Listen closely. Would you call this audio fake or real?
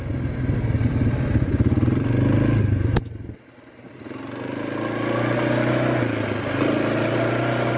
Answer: real